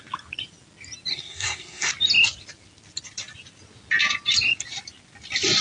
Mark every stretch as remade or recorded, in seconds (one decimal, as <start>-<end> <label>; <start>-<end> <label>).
0.0-1.1 recorded; 1.1-1.9 remade; 1.9-5.6 recorded